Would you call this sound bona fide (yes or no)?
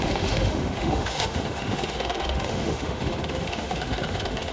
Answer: no